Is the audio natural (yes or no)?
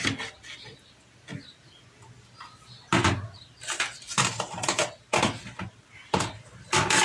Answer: yes